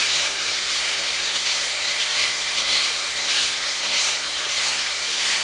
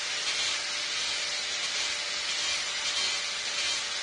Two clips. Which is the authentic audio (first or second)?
second